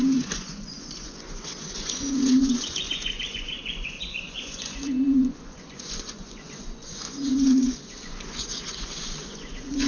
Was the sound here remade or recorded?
remade